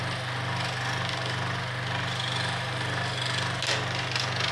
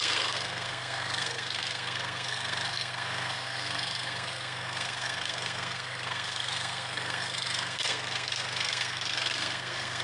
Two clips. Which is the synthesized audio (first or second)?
second